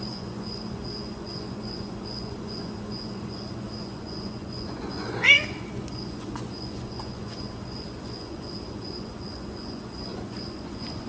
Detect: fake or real fake